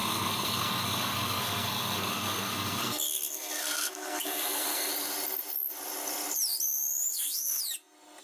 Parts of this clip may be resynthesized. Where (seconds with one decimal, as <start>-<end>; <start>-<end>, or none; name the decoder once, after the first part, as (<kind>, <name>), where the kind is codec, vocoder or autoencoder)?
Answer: 0.0-4.9 (codec, SNAC); 7.1-7.6